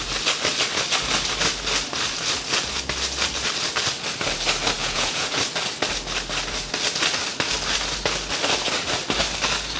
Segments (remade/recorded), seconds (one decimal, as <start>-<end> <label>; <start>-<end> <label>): 0.0-4.8 recorded; 4.8-5.4 remade; 5.4-9.8 recorded